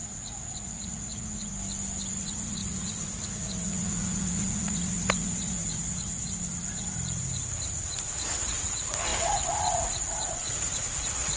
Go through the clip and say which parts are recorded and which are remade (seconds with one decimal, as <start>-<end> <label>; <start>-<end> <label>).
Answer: 0.0-1.5 remade; 1.5-2.1 recorded; 2.1-11.4 remade

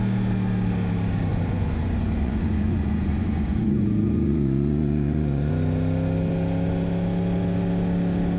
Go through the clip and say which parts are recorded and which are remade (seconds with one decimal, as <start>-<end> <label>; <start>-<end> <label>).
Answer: 0.0-1.3 recorded; 1.3-5.5 remade; 5.5-8.4 recorded

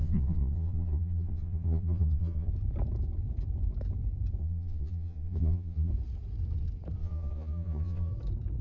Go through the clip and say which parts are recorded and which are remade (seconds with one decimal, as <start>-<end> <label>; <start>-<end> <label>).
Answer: 0.0-2.5 remade; 2.5-4.4 recorded; 4.4-5.9 remade; 5.9-7.0 recorded; 7.0-8.1 remade; 8.1-8.6 recorded

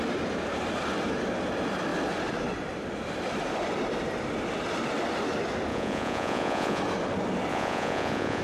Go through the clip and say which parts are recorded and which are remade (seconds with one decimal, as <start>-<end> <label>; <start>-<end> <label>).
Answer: 0.0-5.7 recorded; 5.7-6.8 remade; 6.8-7.5 recorded; 7.5-8.4 remade

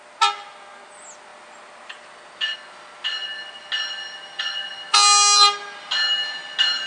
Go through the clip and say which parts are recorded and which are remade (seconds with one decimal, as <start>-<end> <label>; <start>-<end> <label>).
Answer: 0.0-6.9 recorded

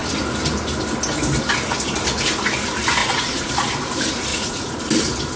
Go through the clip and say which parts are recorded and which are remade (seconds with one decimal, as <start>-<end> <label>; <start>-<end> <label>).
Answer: 0.0-3.0 recorded; 3.0-3.5 remade; 3.5-4.3 recorded; 4.3-4.8 remade; 4.8-5.4 recorded

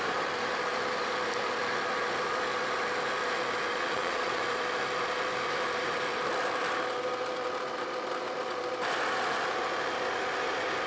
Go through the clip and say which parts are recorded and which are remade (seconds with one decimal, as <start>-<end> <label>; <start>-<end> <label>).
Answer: 0.0-3.7 recorded; 3.7-4.4 remade; 4.4-10.9 recorded